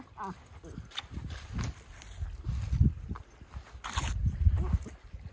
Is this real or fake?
real